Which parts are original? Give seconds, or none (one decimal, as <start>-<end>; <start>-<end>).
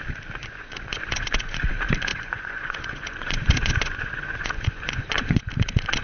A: 0.0-0.4; 1.7-2.1; 5.4-6.0